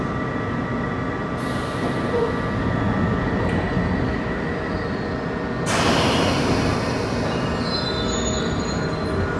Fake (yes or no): no